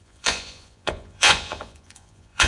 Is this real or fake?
fake